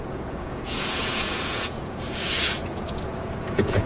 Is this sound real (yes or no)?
no